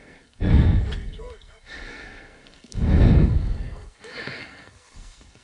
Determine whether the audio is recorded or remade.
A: remade